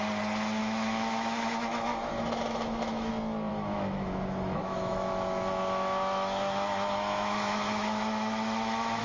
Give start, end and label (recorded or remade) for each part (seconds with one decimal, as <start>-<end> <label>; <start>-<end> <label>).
0.0-0.6 recorded; 0.6-3.1 remade; 3.1-3.5 recorded; 3.5-9.0 remade